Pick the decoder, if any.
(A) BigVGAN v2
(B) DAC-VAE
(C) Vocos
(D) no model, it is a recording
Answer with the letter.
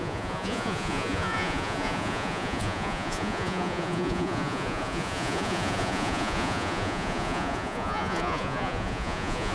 C